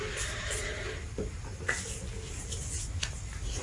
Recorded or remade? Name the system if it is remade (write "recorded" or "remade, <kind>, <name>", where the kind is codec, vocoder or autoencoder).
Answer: recorded